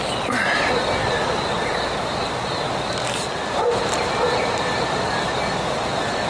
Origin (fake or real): real